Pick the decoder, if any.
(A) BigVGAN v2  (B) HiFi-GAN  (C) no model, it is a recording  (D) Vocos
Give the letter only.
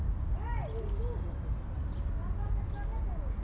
C